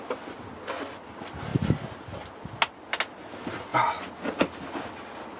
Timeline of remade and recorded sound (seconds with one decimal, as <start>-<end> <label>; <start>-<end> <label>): 0.0-1.5 recorded; 1.5-2.3 remade; 2.3-5.4 recorded